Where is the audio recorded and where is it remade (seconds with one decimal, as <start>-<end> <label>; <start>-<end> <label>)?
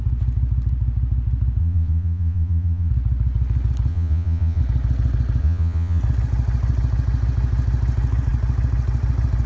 0.0-1.6 recorded; 1.6-2.9 remade; 2.9-3.9 recorded; 3.9-4.6 remade; 4.6-5.4 recorded; 5.4-6.0 remade; 6.0-9.5 recorded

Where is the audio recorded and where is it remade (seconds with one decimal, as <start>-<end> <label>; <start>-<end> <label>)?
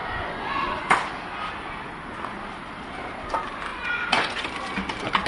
0.0-0.9 remade; 0.9-3.7 recorded; 3.7-4.4 remade; 4.4-5.3 recorded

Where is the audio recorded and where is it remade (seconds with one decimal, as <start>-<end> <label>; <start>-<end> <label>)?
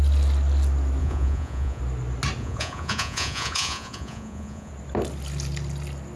0.0-1.0 recorded; 1.0-1.8 remade; 1.8-2.4 recorded; 2.4-4.7 remade; 4.7-6.2 recorded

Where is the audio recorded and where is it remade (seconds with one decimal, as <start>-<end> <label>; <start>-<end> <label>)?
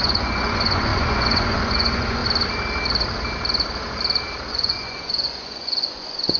0.0-2.2 remade; 2.2-4.5 recorded; 4.5-6.4 remade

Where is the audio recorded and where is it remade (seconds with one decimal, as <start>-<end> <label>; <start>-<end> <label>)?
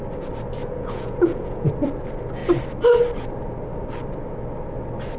0.0-0.6 recorded; 0.6-1.7 remade; 1.7-5.2 recorded